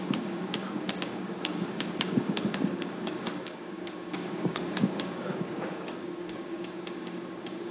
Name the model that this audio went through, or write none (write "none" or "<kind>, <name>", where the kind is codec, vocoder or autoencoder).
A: codec, DAC